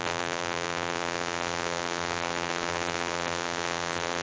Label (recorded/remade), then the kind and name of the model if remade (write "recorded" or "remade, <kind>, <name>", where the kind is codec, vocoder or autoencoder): remade, vocoder, BigVGAN v2